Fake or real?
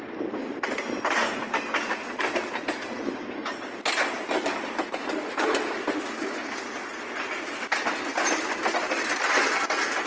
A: real